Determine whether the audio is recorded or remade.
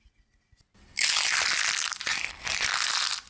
recorded